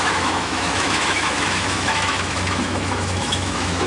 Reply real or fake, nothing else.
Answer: fake